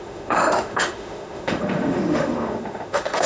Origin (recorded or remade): remade